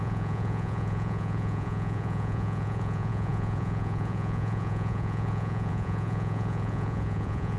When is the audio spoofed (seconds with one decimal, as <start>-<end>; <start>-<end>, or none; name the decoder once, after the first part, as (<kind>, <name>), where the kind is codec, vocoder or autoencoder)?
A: 0.0-7.6 (vocoder, Vocos)

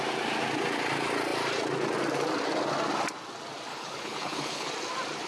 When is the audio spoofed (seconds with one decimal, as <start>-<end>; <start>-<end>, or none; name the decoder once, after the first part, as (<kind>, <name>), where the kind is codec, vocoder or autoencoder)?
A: 3.7-4.7 (codec, HILCodec)

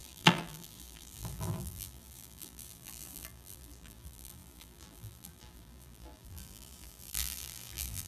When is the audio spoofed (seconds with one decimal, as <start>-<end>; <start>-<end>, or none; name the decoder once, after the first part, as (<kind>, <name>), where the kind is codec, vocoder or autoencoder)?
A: 0.0-8.1 (vocoder, BigVGAN v2)